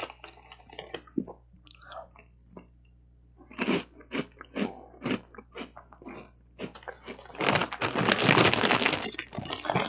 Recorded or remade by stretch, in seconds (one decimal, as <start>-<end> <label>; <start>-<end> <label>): 0.0-9.9 recorded